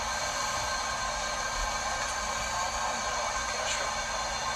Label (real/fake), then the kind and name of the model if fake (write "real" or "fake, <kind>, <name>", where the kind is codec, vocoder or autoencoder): real